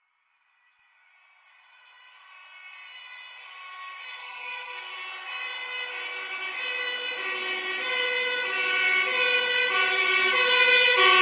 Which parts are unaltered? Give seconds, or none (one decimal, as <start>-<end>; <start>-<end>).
0.0-4.2; 4.8-11.2